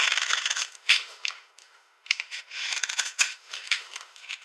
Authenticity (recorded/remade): remade